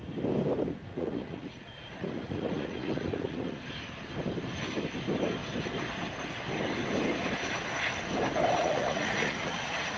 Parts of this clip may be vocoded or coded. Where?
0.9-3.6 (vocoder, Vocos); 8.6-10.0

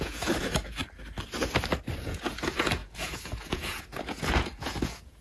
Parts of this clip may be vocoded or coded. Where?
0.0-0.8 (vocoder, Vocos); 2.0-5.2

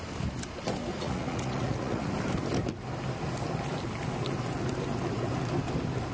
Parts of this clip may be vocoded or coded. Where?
0.9-2.1 (vocoder, Vocos)

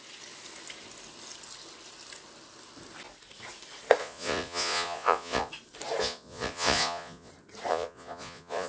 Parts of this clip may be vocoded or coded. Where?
4.0-5.5 (vocoder, Vocos); 6.0-7.3; 7.7-8.7

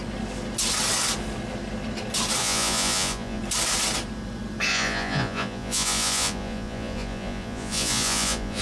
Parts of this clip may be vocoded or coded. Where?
2.4-3.4 (vocoder, Vocos); 4.7-8.6

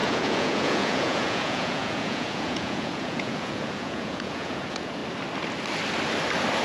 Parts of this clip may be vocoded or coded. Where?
0.0-5.0 (vocoder, Vocos)

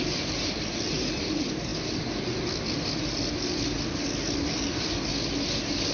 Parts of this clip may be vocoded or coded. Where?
none

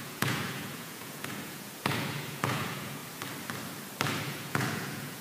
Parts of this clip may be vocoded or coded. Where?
0.0-3.0 (vocoder, Vocos); 4.2-5.2